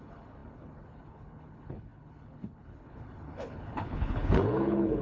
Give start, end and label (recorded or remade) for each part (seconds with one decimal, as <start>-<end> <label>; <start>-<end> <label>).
0.0-5.0 remade